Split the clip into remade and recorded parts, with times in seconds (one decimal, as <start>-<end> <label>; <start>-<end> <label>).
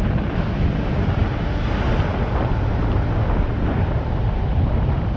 0.0-5.2 recorded